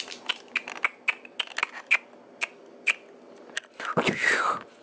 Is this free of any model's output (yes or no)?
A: yes